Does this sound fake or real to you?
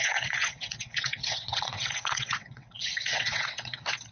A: fake